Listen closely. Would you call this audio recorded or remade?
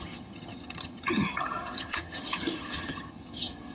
remade